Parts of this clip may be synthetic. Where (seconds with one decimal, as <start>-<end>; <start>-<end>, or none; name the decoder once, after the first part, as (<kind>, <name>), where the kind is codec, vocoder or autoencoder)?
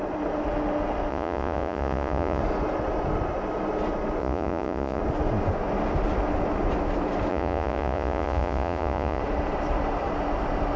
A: 1.1-2.4 (vocoder, Vocos); 4.2-5.0; 7.3-9.2